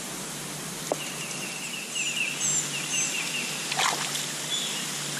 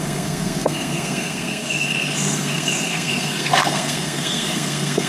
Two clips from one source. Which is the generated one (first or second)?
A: second